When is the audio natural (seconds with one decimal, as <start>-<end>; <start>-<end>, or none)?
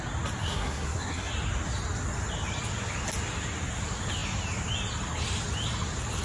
0.0-0.4; 1.3-6.2